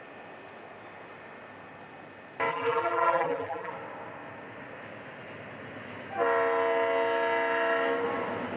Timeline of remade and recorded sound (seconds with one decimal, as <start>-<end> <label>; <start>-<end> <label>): 0.0-2.5 recorded; 2.5-3.7 remade; 3.7-8.6 recorded

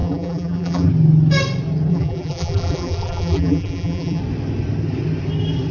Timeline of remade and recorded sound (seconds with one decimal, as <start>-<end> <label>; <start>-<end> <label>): 0.0-0.9 remade; 0.9-1.9 recorded; 1.9-4.2 remade; 4.2-5.7 recorded

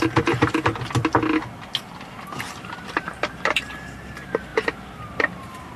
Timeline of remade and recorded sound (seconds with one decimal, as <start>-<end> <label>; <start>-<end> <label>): 0.0-0.7 remade; 0.7-2.5 recorded; 2.5-5.8 remade

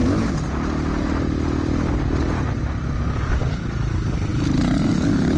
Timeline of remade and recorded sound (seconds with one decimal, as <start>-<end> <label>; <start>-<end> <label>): 0.0-5.4 recorded

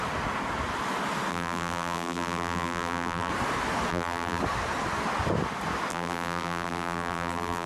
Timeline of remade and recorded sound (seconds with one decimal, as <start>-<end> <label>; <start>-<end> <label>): 0.0-1.3 recorded; 1.3-3.3 remade; 3.3-3.9 recorded; 3.9-4.4 remade; 4.4-5.9 recorded; 5.9-7.7 remade

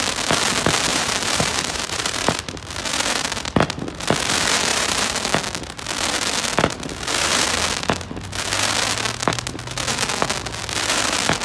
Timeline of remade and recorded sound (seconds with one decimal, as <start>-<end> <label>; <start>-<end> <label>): 0.0-0.9 recorded; 0.9-2.4 remade; 2.4-4.7 recorded; 4.7-5.3 remade; 5.3-11.4 recorded

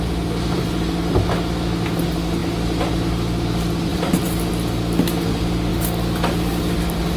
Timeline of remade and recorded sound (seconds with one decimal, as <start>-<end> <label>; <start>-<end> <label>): 0.0-3.9 recorded; 3.9-4.5 remade; 4.5-5.7 recorded; 5.7-6.6 remade; 6.6-7.2 recorded

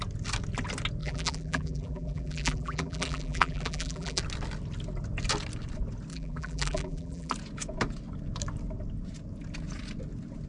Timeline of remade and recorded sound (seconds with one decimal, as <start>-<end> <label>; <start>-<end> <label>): 0.0-1.0 recorded; 1.0-4.2 remade; 4.2-6.1 recorded; 6.1-7.3 remade; 7.3-10.5 recorded